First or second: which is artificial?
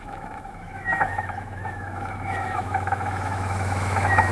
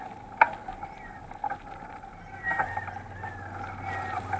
first